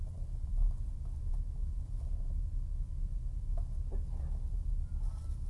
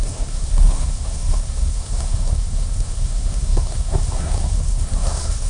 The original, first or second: first